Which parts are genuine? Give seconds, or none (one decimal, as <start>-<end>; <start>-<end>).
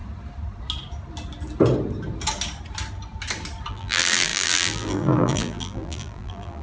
0.0-3.7